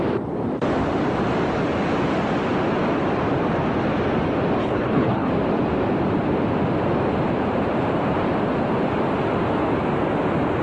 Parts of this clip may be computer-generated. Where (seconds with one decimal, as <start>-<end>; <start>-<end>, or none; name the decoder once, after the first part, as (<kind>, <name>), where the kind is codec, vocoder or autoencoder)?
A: 4.6-5.3 (codec, HILCodec)